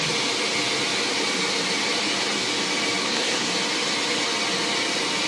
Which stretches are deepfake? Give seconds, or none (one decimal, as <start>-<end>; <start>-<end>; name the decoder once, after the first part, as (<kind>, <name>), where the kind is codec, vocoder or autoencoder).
3.0-3.5 (codec, SNAC)